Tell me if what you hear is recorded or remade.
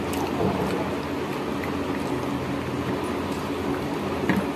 recorded